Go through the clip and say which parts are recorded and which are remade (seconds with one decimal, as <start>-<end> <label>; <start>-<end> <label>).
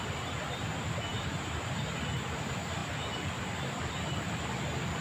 0.0-1.1 recorded; 1.1-2.0 remade; 2.0-5.0 recorded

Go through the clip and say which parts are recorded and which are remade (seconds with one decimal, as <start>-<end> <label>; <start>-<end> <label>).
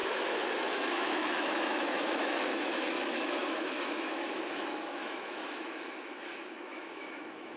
0.0-7.6 remade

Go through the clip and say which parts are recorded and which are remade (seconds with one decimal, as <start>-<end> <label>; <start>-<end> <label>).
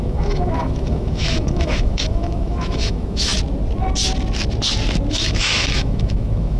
0.0-3.3 remade; 3.3-5.1 recorded; 5.1-6.6 remade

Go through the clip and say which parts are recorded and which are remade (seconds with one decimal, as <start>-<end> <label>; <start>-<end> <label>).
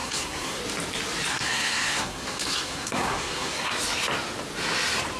0.0-0.6 remade; 0.6-1.3 recorded; 1.3-3.7 remade; 3.7-5.2 recorded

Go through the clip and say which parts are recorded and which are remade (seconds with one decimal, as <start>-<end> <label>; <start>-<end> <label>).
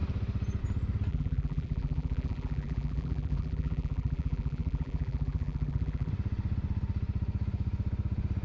0.0-1.1 recorded; 1.1-6.1 remade; 6.1-8.4 recorded